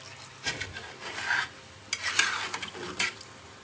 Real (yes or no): yes